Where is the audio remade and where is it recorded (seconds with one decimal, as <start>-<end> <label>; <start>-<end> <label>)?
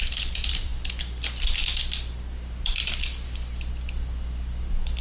0.0-5.0 recorded